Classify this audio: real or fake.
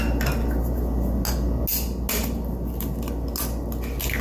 real